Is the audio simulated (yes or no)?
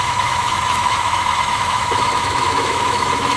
yes